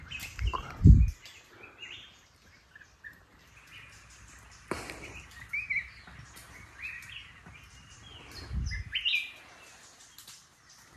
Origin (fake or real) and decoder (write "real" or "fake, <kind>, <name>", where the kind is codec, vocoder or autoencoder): real